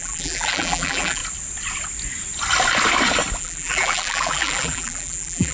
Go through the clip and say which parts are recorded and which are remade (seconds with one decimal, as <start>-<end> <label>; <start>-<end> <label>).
0.0-1.2 remade; 1.2-3.4 recorded; 3.4-5.5 remade